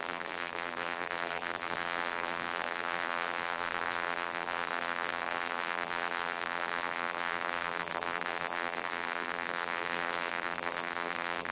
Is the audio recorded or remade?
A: remade